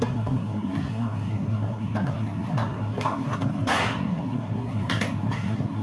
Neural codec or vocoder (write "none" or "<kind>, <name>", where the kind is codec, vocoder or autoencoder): codec, SNAC